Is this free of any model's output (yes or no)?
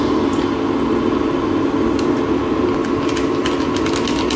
yes